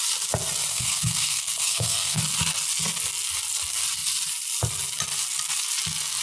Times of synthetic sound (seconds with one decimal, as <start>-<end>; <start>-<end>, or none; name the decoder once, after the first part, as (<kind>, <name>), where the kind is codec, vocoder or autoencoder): 0.7-2.2 (codec, SNAC)